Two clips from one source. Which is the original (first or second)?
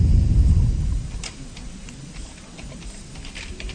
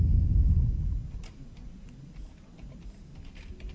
second